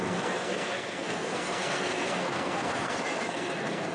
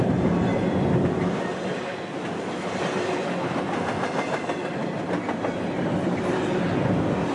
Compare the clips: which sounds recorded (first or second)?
second